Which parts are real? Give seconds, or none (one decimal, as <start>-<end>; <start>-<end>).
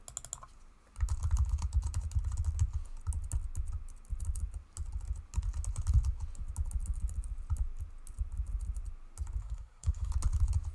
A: 0.0-9.4; 10.1-10.7